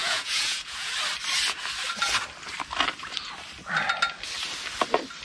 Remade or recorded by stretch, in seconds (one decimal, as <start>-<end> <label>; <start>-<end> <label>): 0.0-0.9 remade; 0.9-5.2 recorded